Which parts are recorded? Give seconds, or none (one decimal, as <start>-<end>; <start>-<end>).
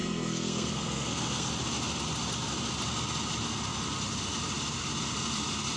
1.5-5.8